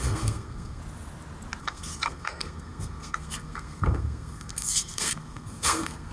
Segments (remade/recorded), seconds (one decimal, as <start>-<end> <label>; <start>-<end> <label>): 0.0-0.8 remade; 0.8-1.6 recorded; 1.6-6.1 remade